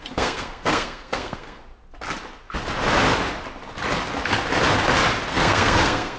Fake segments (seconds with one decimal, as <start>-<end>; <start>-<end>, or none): 0.0-1.6; 5.3-6.2